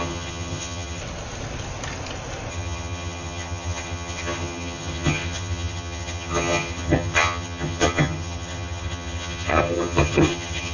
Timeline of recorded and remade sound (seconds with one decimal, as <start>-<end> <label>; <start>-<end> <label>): 0.0-1.0 remade; 1.0-2.5 recorded; 2.5-10.7 remade